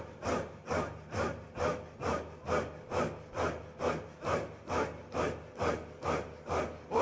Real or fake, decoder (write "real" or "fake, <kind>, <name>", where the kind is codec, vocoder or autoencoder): real